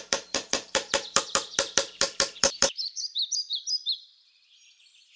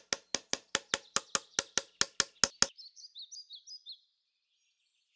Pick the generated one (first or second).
first